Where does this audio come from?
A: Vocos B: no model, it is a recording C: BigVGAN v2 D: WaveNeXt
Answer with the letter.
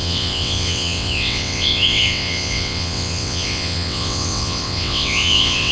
D